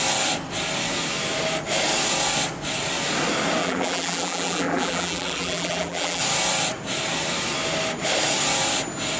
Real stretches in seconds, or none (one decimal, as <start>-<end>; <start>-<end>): 0.0-3.6; 6.2-9.2

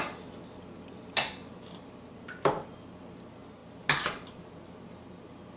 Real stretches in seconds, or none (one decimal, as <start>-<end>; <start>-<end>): 0.0-5.6

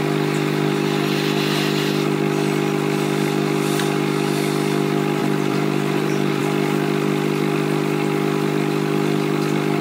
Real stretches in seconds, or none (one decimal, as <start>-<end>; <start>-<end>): 0.0-5.2; 6.4-9.8